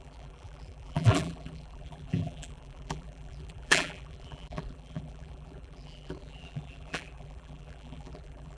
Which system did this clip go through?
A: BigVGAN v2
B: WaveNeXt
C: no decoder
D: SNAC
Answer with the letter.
A